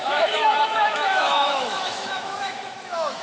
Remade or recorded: remade